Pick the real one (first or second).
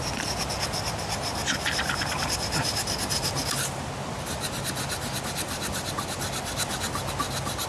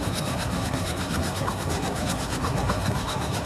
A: first